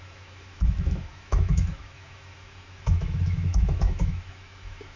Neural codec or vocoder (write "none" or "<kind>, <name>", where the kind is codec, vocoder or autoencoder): autoencoder, DAC-VAE